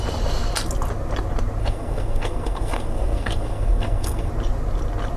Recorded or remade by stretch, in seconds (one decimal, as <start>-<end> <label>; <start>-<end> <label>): 0.0-1.6 recorded; 1.6-4.3 remade; 4.3-5.2 recorded